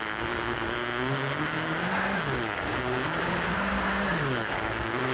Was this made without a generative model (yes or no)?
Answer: no